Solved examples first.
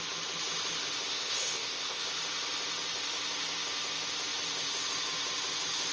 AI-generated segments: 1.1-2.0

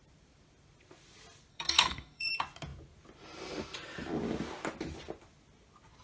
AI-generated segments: 1.5-2.3

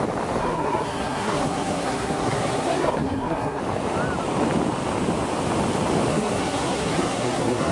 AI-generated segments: 0.4-3.6; 6.1-7.7

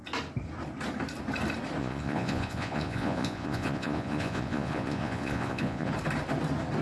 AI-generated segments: 1.8-5.9